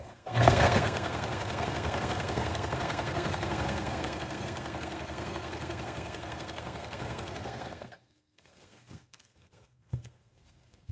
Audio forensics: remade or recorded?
remade